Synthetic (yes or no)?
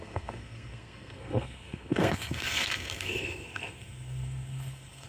yes